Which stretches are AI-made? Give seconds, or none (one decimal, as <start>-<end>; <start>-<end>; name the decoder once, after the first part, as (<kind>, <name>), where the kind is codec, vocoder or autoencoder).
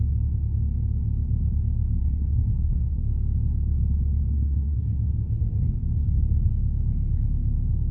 2.0-3.0 (codec, SNAC); 4.3-5.1